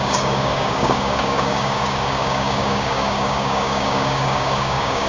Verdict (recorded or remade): remade